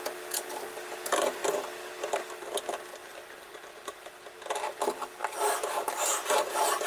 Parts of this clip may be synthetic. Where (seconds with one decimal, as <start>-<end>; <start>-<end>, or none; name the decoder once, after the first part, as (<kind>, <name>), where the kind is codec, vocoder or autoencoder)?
3.0-4.1 (vocoder, BigVGAN v2); 5.2-6.5